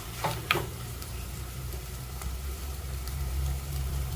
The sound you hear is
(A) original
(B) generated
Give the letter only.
B